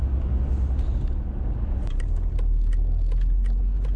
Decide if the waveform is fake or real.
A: real